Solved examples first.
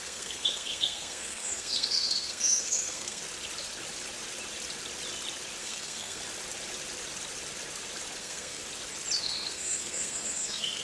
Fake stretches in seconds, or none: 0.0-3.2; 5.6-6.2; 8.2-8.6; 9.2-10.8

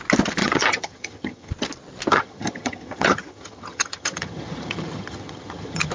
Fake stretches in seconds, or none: 0.4-1.5; 2.1-5.9